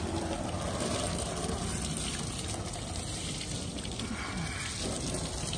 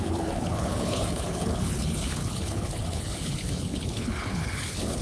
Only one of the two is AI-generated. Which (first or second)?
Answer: second